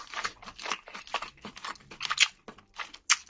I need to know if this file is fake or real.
real